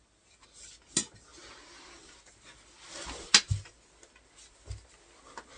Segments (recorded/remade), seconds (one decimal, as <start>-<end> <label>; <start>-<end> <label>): 0.0-5.6 recorded